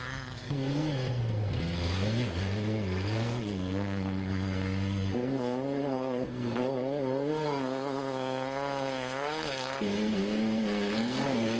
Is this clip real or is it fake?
fake